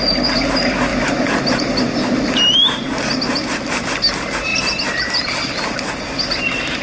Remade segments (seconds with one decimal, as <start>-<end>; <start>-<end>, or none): none